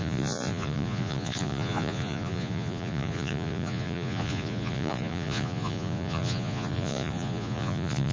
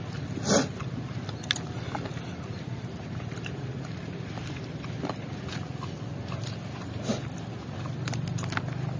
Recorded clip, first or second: second